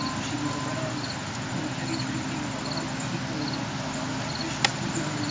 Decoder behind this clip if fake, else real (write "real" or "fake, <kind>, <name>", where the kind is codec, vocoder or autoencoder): real